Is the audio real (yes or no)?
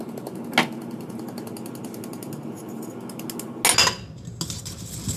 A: yes